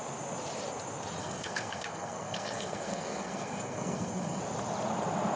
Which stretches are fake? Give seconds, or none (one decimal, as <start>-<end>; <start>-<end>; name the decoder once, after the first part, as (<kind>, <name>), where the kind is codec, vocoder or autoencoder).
1.2-4.4 (codec, SNAC)